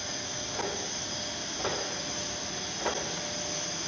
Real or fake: real